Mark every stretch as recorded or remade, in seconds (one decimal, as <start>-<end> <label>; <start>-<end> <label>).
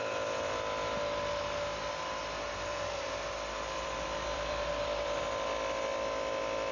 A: 0.0-1.4 remade; 1.4-2.7 recorded; 2.7-5.2 remade; 5.2-6.7 recorded